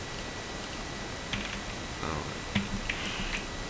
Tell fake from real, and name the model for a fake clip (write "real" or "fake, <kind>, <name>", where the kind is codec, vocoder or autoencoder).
real